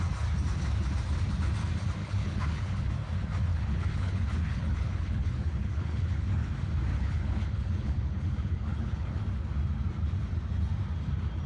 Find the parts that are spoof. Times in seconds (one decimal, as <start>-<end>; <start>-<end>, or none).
2.0-2.9; 3.5-6.5; 6.9-9.2